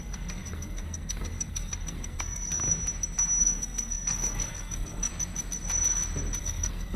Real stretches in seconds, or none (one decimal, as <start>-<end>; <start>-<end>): 2.6-3.4; 5.1-6.4